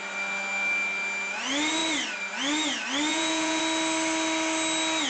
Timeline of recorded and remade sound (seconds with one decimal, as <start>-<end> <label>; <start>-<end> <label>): 0.0-3.1 recorded; 3.1-3.6 remade; 3.6-5.1 recorded